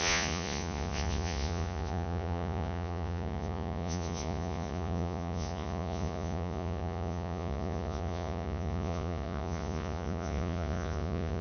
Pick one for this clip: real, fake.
fake